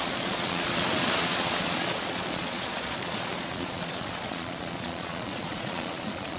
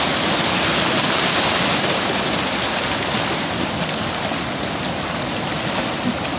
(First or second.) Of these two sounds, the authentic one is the second